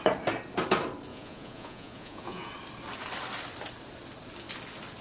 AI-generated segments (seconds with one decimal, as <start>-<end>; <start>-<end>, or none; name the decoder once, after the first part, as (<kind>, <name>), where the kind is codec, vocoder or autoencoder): 1.1-2.5 (vocoder, Vocos)